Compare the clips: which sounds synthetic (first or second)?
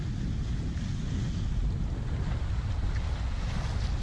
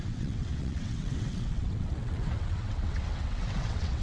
second